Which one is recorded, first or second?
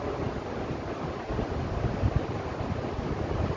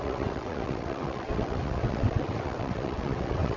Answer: first